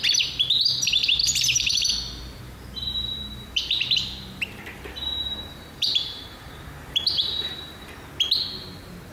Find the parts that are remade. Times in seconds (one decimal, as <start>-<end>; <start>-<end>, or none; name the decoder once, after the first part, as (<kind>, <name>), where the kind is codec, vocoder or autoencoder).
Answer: 1.2-1.9 (vocoder, BigVGAN v2); 2.8-8.0